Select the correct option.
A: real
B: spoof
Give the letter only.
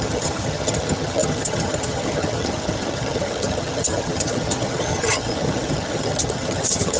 B